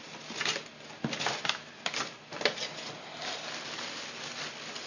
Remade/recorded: recorded